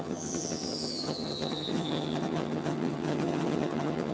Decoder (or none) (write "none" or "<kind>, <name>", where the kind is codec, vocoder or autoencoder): vocoder, HiFi-GAN